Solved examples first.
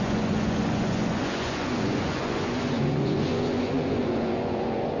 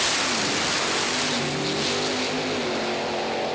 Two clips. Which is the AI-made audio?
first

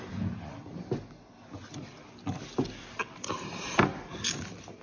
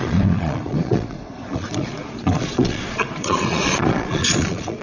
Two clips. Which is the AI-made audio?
second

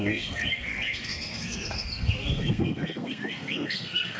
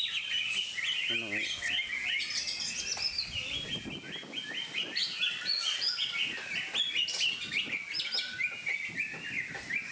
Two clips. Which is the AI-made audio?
first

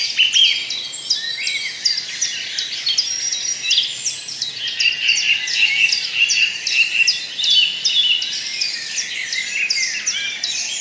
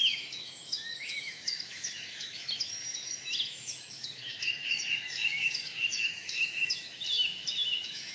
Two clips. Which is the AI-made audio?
second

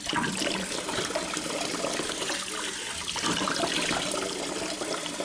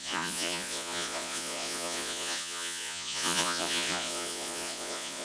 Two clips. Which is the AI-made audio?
second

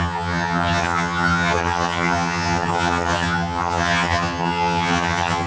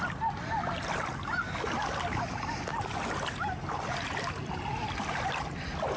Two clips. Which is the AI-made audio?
first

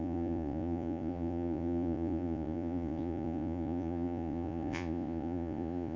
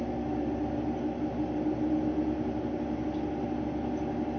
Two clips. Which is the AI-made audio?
first